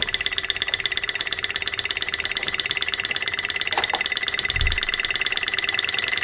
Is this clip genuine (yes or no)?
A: no